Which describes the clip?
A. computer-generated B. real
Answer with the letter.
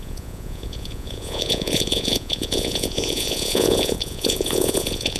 A